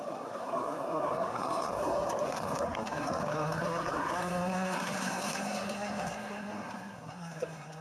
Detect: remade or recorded remade